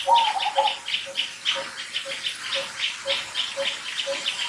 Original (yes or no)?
yes